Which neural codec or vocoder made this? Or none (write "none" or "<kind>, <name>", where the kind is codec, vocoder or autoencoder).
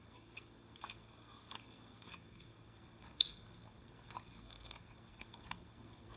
codec, SNAC